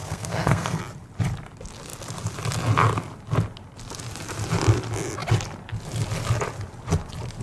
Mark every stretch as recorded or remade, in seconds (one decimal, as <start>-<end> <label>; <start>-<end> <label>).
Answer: 0.0-0.8 remade; 0.8-7.4 recorded